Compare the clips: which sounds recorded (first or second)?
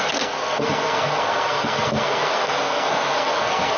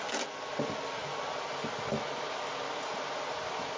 second